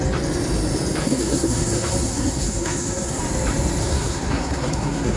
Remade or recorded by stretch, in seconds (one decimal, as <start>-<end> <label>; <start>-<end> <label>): 0.0-1.0 recorded; 1.0-3.2 remade; 3.2-3.8 recorded; 3.8-5.2 remade